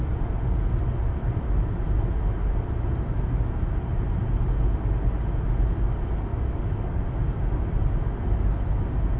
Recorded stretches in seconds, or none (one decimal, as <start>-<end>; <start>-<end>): 0.0-6.3; 7.0-9.2

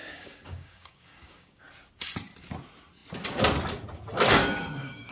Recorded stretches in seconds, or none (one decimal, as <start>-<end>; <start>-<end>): 1.6-4.4

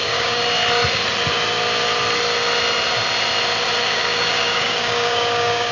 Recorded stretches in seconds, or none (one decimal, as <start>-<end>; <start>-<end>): 0.4-3.8

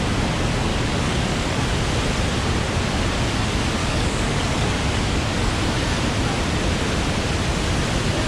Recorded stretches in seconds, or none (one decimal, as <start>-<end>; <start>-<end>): 0.0-0.7; 1.7-3.8; 5.5-8.3